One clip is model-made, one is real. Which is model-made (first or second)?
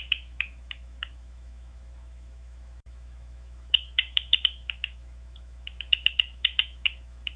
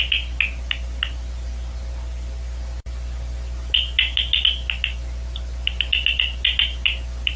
first